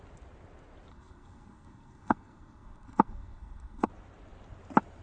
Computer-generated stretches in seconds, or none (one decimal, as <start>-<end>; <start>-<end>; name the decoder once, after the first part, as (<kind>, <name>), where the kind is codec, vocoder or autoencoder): 0.9-3.9 (codec, SNAC)